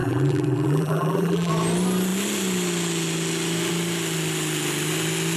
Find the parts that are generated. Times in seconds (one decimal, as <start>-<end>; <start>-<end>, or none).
0.0-1.5